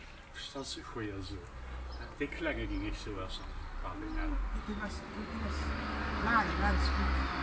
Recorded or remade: recorded